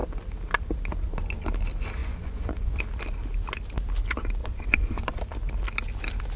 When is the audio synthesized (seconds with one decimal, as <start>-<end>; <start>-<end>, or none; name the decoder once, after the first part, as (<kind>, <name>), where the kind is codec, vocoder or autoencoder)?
2.0-2.8 (vocoder, Vocos); 4.4-5.2